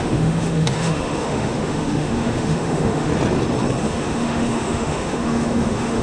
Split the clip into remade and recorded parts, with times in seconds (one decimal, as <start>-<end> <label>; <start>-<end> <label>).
0.0-3.1 remade; 3.1-3.8 recorded; 3.8-6.0 remade